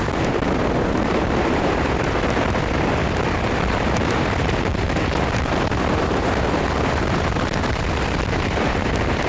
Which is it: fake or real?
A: fake